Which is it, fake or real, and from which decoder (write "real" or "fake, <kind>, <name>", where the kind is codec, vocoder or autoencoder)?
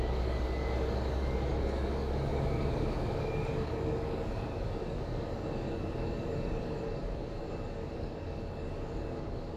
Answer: fake, codec, DAC